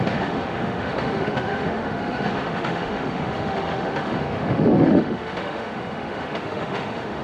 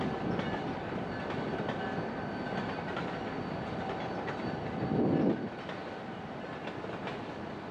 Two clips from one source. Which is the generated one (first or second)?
first